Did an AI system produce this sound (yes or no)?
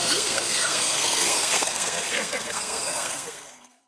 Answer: yes